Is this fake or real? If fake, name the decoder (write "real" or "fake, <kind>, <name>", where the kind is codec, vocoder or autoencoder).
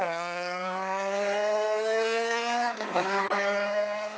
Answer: fake, codec, SNAC